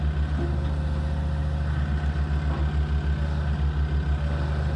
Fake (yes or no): no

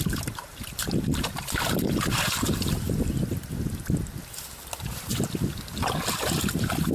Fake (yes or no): no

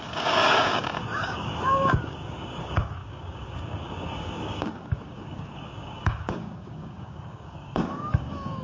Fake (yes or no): yes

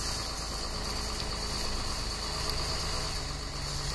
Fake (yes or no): no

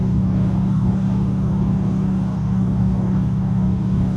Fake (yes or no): yes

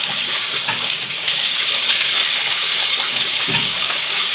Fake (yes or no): yes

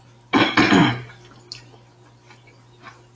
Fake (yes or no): no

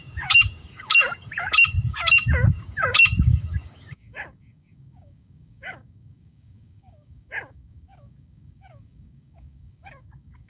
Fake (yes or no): yes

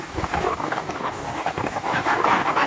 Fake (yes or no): yes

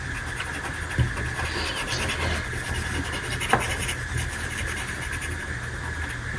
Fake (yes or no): no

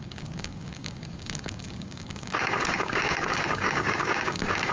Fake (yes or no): yes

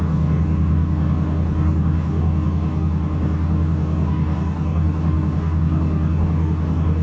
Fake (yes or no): yes